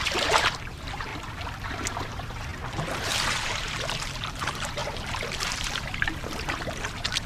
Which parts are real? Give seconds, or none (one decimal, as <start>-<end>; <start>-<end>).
1.1-2.1